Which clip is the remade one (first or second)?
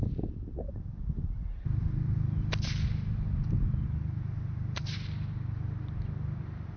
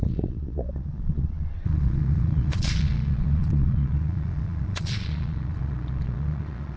second